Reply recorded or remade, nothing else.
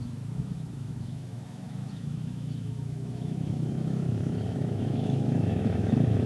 remade